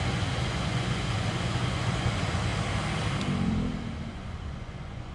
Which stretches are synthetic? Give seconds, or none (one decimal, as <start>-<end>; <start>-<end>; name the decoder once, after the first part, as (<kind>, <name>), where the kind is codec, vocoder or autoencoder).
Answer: 0.0-2.5 (vocoder, Vocos); 4.1-5.1